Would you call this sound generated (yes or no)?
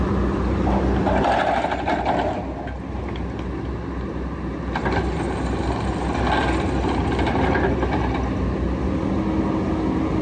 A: no